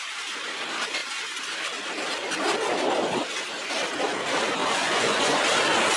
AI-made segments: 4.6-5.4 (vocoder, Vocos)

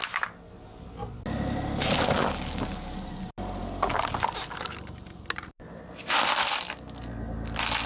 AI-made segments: none